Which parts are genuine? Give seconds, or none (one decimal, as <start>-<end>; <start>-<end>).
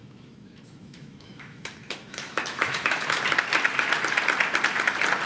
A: 3.2-5.3